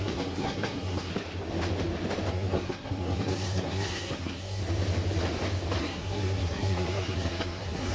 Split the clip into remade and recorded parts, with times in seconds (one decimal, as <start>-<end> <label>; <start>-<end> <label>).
0.0-1.1 remade; 1.1-2.3 recorded; 2.3-4.6 remade; 4.6-5.8 recorded; 5.8-7.9 remade